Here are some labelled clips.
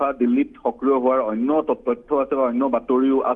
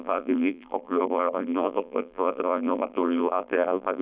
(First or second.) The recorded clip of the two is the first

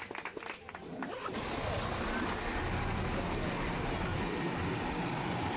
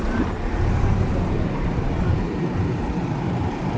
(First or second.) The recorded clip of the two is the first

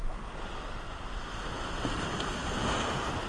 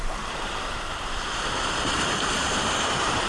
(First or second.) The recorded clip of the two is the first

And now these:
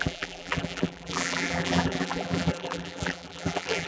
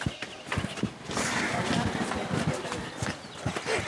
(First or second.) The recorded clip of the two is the second